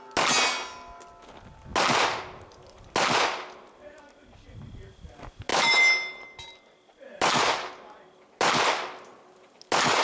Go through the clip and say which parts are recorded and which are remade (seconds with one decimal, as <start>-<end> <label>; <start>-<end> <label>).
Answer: 0.0-10.0 recorded